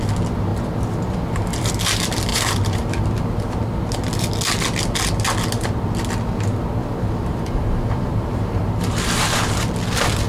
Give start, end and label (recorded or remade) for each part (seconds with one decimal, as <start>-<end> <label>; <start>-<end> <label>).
0.0-0.5 recorded; 0.5-1.7 remade; 1.7-2.3 recorded; 2.3-3.6 remade; 3.6-6.8 recorded; 6.8-9.7 remade; 9.7-10.3 recorded